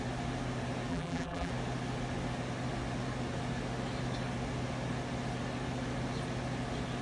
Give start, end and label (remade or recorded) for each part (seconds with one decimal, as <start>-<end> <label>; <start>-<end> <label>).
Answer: 0.0-0.9 recorded; 0.9-1.5 remade; 1.5-7.0 recorded